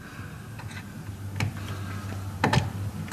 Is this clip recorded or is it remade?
recorded